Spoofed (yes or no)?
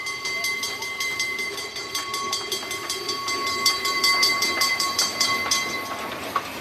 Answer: yes